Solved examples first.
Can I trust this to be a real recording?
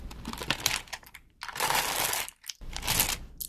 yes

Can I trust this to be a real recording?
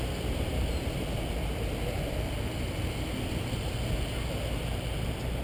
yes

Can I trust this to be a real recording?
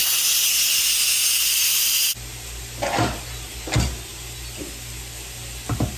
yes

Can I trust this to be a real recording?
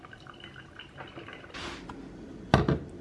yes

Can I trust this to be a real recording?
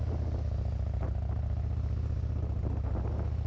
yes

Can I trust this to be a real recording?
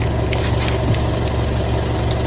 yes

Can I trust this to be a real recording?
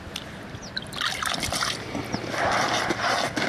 yes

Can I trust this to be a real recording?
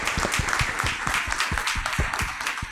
yes